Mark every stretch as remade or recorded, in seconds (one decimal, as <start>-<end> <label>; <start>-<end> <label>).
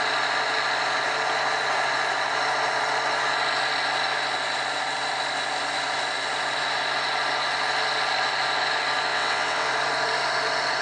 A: 0.0-9.1 recorded; 9.1-9.7 remade; 9.7-10.8 recorded